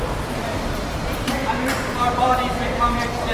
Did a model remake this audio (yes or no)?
no